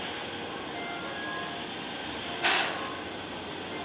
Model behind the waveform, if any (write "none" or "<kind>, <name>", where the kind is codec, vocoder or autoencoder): none